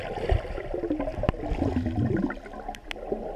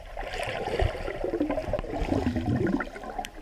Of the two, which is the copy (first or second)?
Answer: second